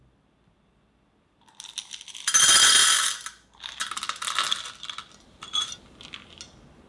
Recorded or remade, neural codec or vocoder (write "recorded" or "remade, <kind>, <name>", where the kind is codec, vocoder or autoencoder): recorded